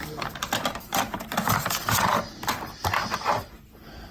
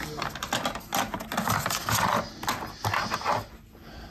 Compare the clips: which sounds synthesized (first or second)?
first